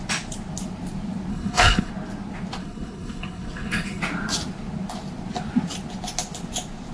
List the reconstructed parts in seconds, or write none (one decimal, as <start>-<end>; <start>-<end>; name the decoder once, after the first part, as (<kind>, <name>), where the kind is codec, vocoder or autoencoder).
1.3-1.9 (codec, HILCodec); 2.6-4.0